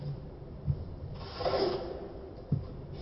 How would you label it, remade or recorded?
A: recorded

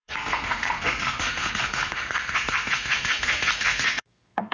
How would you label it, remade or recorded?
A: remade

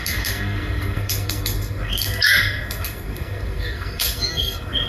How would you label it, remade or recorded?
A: remade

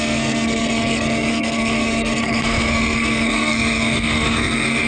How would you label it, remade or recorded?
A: remade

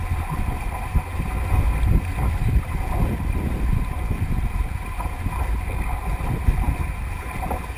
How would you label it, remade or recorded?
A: recorded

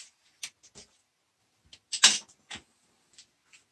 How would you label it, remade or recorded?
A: recorded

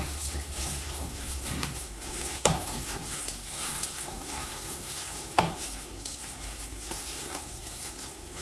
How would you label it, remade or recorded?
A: remade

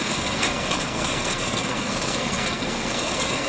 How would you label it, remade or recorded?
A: remade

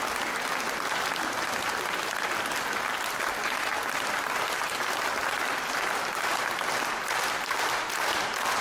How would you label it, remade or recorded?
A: recorded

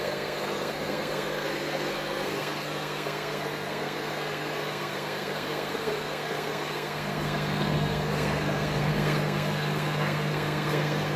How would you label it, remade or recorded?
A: remade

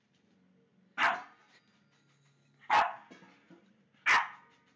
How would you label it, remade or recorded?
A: recorded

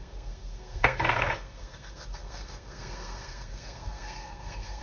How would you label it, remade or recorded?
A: remade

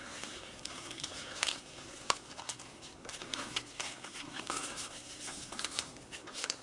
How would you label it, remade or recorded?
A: remade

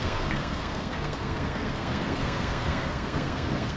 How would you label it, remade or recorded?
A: remade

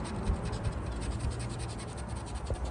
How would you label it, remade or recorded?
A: recorded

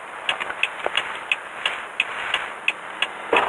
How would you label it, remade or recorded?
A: recorded